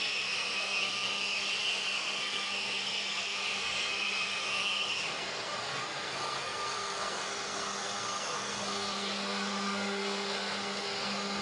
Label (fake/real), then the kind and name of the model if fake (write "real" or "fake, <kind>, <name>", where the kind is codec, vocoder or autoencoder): fake, codec, SNAC